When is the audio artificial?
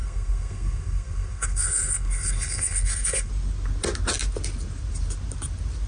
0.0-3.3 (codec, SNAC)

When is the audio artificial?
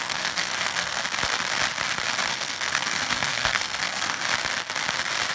0.0-1.0 (codec, SNAC); 2.3-4.2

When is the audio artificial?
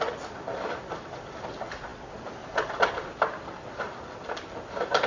none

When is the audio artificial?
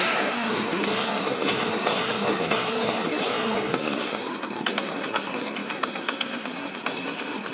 0.0-7.5 (codec, SNAC)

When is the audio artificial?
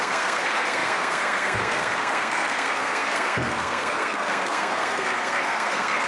0.0-6.1 (codec, SNAC)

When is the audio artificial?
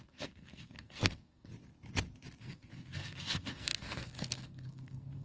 0.0-1.5 (codec, SNAC); 2.4-5.2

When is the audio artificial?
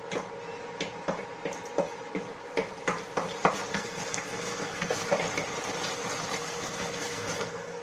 3.7-5.0 (codec, SNAC); 6.4-7.8